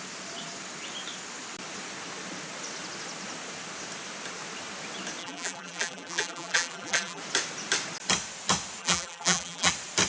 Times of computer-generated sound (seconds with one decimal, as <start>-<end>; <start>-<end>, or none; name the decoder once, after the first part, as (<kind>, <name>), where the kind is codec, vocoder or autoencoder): 5.2-7.2 (vocoder, BigVGAN v2); 8.8-9.7